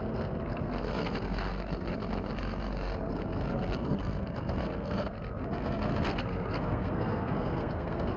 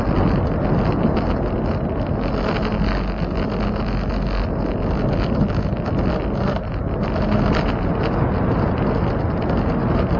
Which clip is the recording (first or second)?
second